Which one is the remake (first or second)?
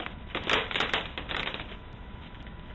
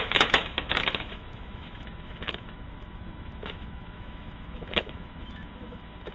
second